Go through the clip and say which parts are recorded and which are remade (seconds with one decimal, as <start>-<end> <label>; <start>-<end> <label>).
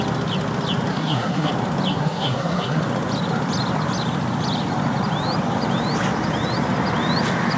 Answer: 0.0-0.9 recorded; 0.9-1.5 remade; 1.5-1.9 recorded; 1.9-2.8 remade; 2.8-7.6 recorded